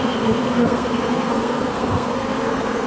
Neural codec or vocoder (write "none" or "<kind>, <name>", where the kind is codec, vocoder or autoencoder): codec, SNAC